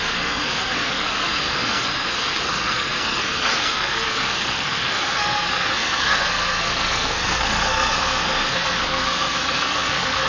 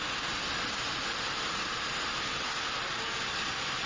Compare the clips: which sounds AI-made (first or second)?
first